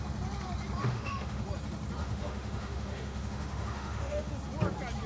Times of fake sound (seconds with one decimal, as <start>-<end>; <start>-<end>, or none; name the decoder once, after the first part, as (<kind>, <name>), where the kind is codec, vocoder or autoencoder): 0.8-1.4 (autoencoder, DAC-VAE); 2.0-4.3